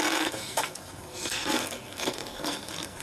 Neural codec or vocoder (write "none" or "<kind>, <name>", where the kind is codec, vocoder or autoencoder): codec, SNAC